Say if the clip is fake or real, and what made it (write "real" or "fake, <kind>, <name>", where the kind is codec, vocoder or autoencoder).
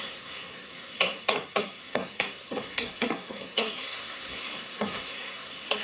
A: fake, codec, SNAC